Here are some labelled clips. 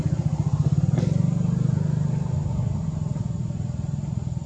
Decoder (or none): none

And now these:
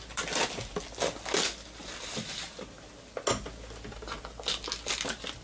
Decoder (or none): none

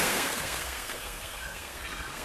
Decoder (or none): codec, SNAC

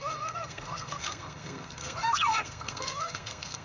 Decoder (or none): codec, SNAC